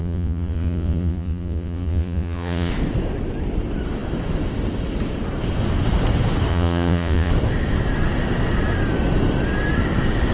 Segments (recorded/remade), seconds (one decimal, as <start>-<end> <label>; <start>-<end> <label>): 0.0-2.7 remade; 2.7-6.5 recorded; 6.5-7.3 remade; 7.3-10.3 recorded